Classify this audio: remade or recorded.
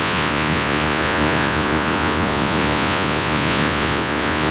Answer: remade